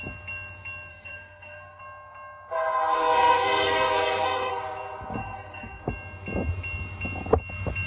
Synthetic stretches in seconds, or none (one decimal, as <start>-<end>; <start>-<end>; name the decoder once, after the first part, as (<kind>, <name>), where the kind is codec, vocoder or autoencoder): 0.9-1.8 (codec, SNAC); 2.9-4.6; 5.2-5.8